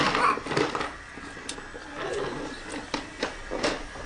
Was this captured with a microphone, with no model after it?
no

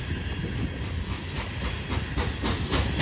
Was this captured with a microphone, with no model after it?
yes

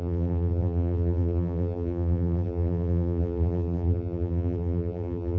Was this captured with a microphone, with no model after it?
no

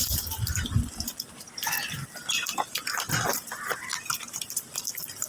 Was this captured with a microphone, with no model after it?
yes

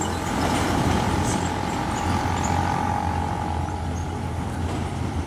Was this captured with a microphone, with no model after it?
yes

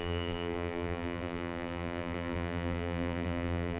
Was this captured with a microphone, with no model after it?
no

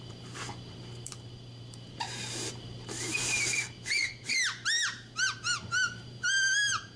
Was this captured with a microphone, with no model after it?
no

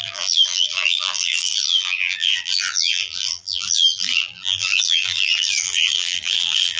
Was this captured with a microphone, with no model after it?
no